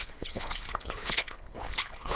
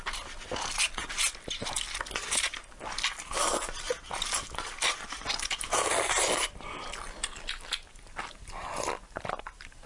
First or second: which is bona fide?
second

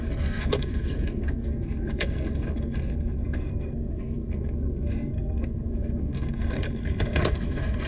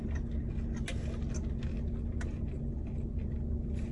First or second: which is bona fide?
second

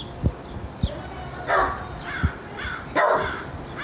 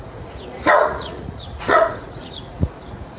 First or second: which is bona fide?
first